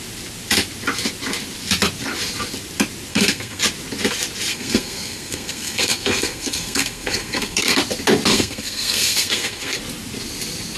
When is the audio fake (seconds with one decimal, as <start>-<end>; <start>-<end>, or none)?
3.1-3.6; 4.5-7.8; 8.3-9.8

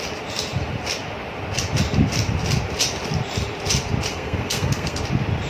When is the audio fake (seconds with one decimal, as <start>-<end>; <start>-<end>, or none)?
4.1-5.0

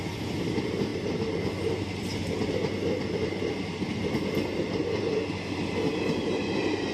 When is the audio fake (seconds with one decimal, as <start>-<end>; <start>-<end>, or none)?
none

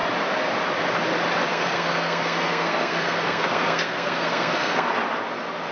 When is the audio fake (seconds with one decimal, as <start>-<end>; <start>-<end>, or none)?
1.5-4.9